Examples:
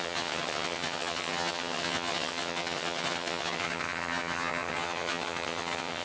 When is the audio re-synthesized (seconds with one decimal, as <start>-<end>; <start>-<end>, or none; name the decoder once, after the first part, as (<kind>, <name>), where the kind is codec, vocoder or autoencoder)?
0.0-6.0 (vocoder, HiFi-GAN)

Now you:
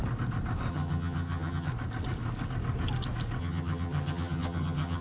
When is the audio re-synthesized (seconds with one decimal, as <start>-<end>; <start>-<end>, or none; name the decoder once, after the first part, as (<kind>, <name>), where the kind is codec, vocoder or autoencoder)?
0.7-1.7 (vocoder, HiFi-GAN); 3.4-5.0

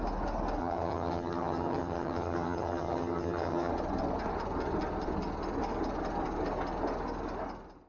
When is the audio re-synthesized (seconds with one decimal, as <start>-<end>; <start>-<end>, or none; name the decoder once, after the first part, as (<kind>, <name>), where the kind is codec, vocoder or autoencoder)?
0.6-3.7 (vocoder, HiFi-GAN)